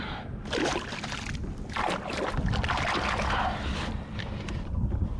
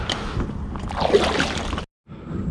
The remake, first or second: first